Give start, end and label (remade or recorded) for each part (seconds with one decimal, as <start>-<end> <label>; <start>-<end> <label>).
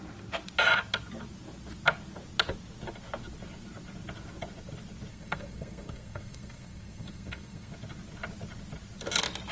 0.0-5.1 recorded; 5.1-7.7 remade; 7.7-9.5 recorded